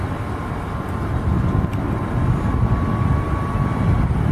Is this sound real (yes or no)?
yes